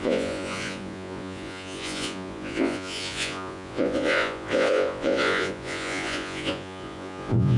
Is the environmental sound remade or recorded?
remade